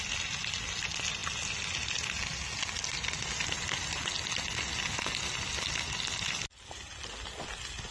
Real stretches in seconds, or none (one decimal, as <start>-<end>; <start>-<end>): 0.0-7.9